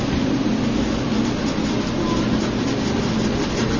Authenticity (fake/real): real